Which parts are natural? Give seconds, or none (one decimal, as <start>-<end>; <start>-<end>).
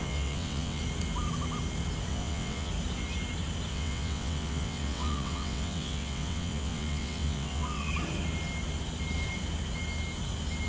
0.8-2.1; 2.7-3.7; 7.9-10.7